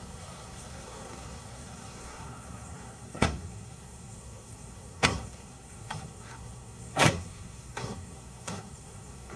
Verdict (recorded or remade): remade